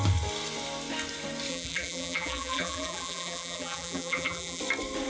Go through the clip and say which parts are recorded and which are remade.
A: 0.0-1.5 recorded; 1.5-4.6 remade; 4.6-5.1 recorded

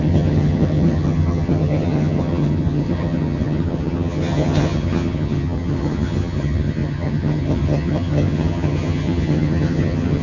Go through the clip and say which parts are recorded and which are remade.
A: 0.0-10.2 remade

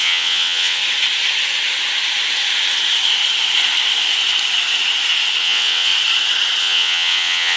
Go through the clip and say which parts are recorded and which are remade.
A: 0.0-0.8 remade; 0.8-5.4 recorded; 5.4-5.9 remade; 5.9-6.6 recorded; 6.6-7.6 remade

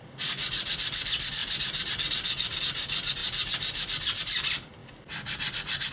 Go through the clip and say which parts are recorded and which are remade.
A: 0.0-3.2 remade; 3.2-4.2 recorded; 4.2-4.8 remade; 4.8-5.9 recorded

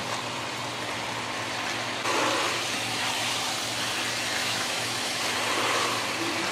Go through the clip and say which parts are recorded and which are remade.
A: 0.0-4.4 recorded; 4.4-5.2 remade; 5.2-6.5 recorded

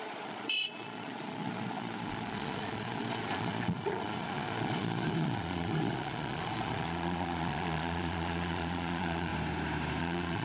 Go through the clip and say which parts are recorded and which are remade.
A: 0.0-9.3 remade; 9.3-10.0 recorded; 10.0-10.4 remade

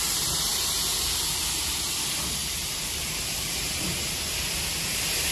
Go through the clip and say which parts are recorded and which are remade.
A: 0.0-2.4 recorded; 2.4-5.3 remade

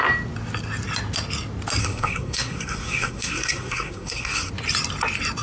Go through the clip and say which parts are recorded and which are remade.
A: 0.0-1.8 recorded; 1.8-4.5 remade; 4.5-5.4 recorded